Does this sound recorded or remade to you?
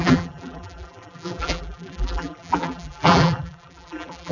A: remade